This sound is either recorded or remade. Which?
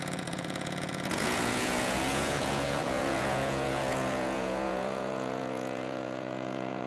remade